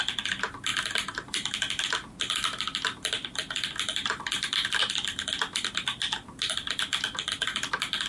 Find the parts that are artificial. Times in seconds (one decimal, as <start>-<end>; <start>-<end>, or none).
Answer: none